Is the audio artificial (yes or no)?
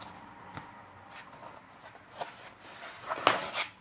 no